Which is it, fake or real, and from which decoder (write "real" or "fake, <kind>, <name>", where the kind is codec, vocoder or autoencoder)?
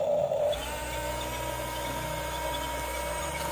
real